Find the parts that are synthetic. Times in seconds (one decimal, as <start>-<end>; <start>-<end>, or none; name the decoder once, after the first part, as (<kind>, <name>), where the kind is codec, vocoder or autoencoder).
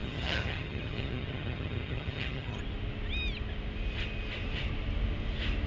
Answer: 0.0-2.6 (vocoder, HiFi-GAN)